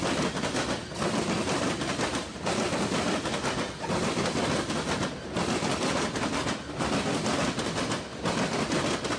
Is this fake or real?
real